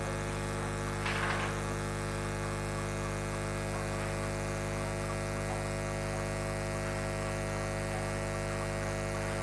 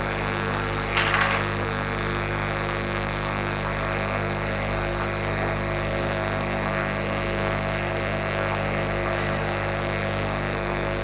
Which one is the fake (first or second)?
second